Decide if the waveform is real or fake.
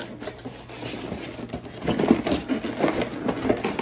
real